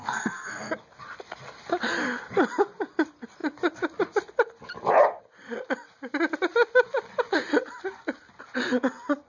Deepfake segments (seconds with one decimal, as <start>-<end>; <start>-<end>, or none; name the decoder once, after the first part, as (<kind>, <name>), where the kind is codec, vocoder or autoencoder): 0.0-0.7 (codec, SNAC)